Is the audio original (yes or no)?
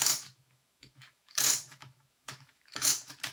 no